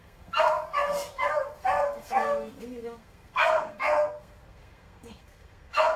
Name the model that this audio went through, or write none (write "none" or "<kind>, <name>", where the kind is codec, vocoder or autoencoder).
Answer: codec, SNAC